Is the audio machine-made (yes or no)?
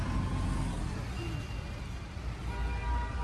no